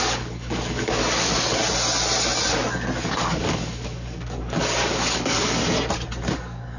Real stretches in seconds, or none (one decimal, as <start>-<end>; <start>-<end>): 1.0-3.1; 5.6-6.3